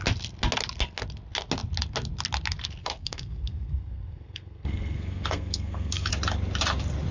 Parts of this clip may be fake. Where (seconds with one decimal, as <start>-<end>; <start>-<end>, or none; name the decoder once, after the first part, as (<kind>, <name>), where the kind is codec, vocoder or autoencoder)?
2.8-6.1 (codec, SNAC)